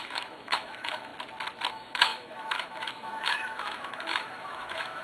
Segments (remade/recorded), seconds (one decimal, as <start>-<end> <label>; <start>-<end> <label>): 0.0-1.1 remade; 1.1-1.7 recorded; 1.7-5.0 remade